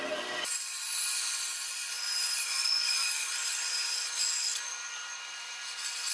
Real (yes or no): no